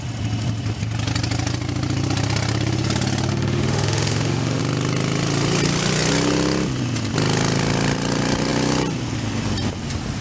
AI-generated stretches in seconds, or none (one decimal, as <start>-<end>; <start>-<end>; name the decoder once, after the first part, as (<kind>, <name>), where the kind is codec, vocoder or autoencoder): 3.3-4.6 (autoencoder, DAC-VAE)